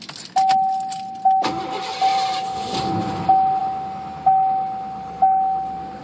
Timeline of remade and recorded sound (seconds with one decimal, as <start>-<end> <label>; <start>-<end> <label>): 0.0-2.1 recorded; 2.1-2.9 remade; 2.9-6.0 recorded